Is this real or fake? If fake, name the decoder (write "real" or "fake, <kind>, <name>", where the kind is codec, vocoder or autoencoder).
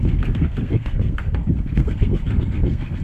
fake, codec, SNAC